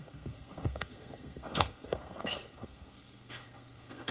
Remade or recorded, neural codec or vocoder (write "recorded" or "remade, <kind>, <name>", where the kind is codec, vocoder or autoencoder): remade, codec, SNAC